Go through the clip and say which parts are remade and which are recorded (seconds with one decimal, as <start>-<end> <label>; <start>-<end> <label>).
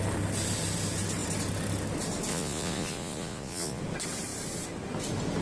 0.0-2.3 recorded; 2.3-3.8 remade; 3.8-5.4 recorded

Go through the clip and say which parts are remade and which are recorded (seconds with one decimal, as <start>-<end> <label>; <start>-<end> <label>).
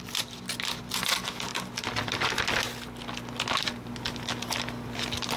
0.0-5.4 recorded